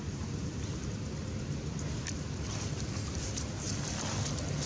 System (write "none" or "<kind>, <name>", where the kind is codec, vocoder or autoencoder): none